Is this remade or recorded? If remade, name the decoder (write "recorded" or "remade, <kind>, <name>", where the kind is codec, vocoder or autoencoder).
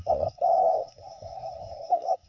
remade, codec, SNAC